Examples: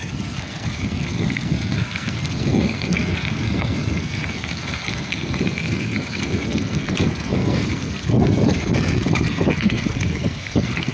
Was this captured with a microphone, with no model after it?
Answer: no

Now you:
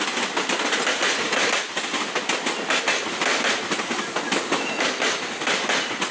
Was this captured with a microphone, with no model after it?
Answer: yes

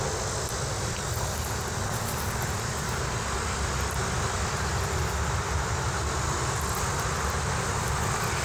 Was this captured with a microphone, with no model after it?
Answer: yes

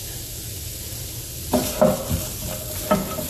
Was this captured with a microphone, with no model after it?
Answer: yes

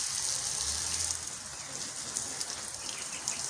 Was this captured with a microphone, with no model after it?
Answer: yes